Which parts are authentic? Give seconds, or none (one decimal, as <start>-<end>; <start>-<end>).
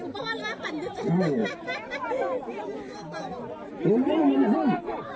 0.0-5.2